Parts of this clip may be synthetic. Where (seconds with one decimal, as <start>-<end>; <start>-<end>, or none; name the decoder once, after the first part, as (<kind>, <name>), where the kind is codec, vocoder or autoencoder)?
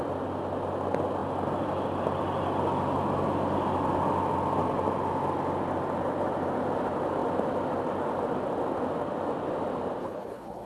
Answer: 10.0-10.7 (codec, HILCodec)